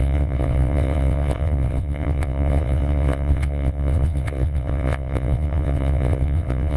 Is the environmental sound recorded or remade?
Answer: remade